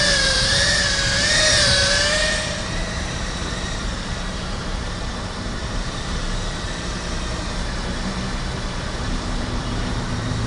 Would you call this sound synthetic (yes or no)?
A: yes